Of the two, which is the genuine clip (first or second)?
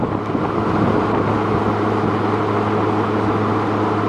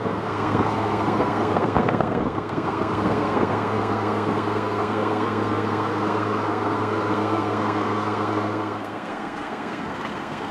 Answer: first